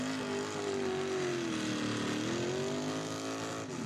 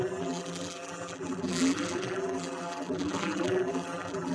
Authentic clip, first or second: first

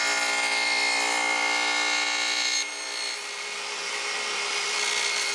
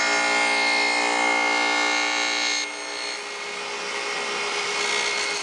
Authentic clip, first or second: second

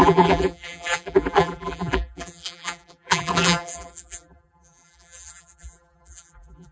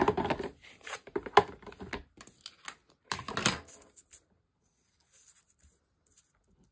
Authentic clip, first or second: second